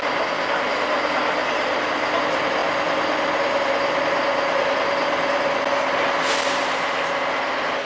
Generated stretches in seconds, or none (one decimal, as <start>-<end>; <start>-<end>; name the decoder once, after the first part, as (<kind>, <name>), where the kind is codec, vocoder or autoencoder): none

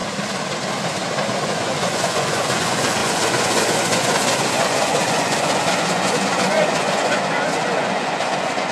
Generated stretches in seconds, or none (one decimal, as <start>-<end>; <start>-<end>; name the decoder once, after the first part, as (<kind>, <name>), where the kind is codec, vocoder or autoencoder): 1.4-8.7 (vocoder, Vocos)

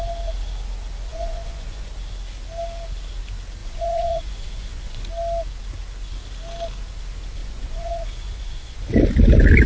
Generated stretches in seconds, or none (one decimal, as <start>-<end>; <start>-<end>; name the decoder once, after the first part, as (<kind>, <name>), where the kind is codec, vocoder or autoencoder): 1.1-1.9 (vocoder, Vocos); 3.6-5.1; 7.4-8.8